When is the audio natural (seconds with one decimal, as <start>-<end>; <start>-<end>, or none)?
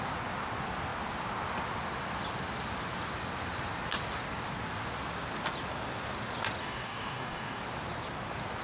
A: 0.0-6.6; 7.6-8.6